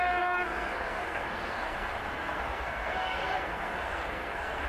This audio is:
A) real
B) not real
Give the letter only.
B